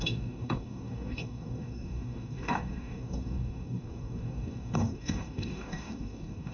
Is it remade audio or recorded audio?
remade